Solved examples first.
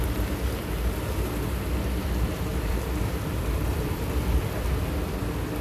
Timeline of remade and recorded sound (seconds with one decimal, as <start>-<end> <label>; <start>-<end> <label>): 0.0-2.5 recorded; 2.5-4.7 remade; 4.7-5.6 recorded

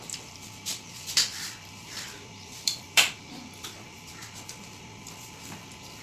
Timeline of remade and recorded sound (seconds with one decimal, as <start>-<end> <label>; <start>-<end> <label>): 0.0-4.2 remade; 4.2-5.4 recorded; 5.4-6.0 remade

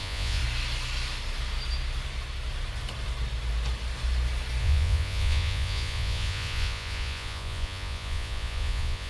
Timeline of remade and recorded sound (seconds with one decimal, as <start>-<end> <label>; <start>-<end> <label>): 0.0-0.4 remade; 0.4-4.6 recorded; 4.6-9.1 remade

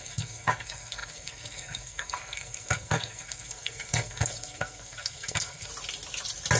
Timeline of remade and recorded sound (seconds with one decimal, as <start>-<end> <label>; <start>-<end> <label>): 0.0-5.7 remade; 5.7-6.6 recorded